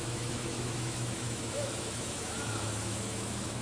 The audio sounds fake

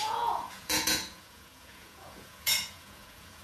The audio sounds fake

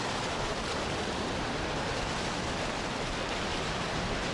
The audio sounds real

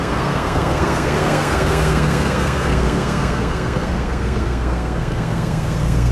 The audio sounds fake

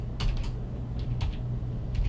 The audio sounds real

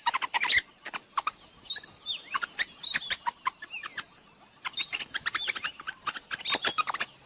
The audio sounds real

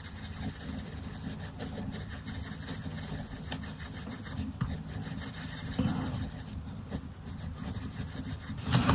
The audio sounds real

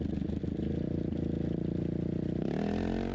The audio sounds real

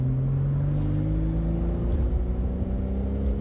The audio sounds real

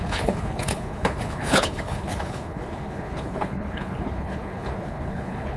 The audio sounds fake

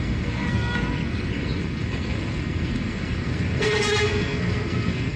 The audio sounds fake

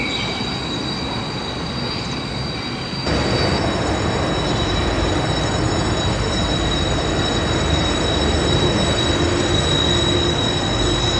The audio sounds real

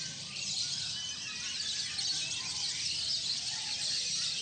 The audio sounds real